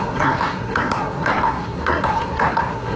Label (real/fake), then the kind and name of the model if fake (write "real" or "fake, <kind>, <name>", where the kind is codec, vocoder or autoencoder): fake, codec, SNAC